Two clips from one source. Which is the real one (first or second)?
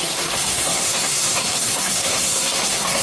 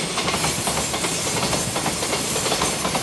second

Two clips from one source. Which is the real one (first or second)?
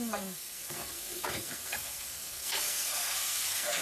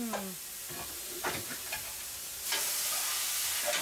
second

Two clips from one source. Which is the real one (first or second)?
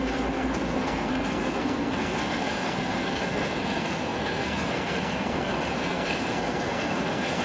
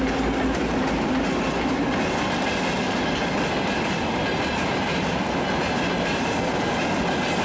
second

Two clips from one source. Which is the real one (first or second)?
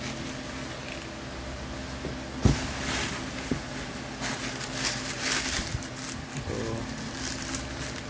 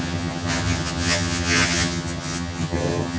first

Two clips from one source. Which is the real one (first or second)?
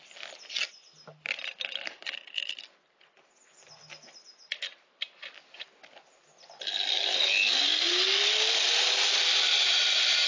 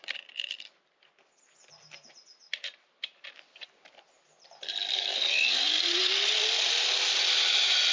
first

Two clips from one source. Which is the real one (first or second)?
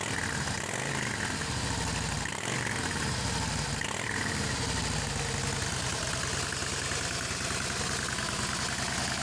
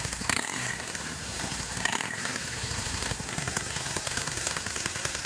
first